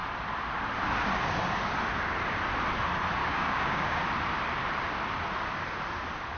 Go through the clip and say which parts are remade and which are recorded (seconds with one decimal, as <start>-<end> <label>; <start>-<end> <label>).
0.0-3.2 recorded; 3.2-4.0 remade; 4.0-6.4 recorded